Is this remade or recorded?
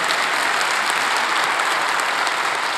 recorded